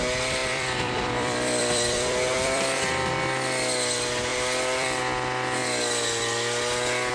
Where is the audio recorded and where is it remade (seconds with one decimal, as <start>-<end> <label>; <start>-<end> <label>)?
0.0-0.4 recorded; 0.4-3.1 remade; 3.1-4.3 recorded; 4.3-5.0 remade; 5.0-7.1 recorded